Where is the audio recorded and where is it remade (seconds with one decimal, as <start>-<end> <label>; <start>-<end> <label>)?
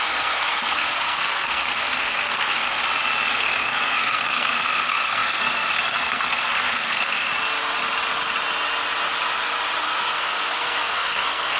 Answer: 0.0-2.8 remade; 2.8-3.3 recorded; 3.3-7.3 remade; 7.3-9.8 recorded; 9.8-11.6 remade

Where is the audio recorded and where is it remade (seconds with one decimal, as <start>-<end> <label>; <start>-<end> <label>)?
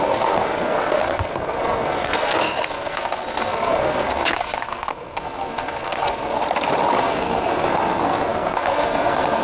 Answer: 0.0-6.4 remade; 6.4-7.0 recorded; 7.0-9.4 remade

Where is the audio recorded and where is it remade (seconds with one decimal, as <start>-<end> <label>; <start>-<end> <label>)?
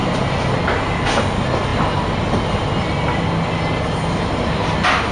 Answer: 0.0-5.1 recorded